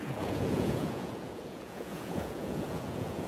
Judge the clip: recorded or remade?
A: remade